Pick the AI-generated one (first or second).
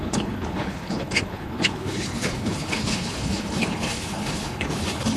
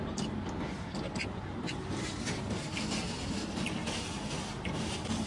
first